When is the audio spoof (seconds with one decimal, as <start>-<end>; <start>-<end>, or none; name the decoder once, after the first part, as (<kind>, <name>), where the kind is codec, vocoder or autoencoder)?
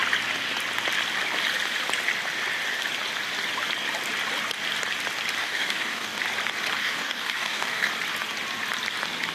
5.4-6.2 (codec, DAC); 6.8-7.9